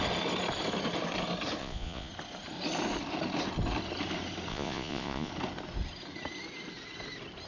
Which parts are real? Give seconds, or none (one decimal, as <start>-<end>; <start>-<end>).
0.0-1.6; 2.1-4.5; 5.3-7.5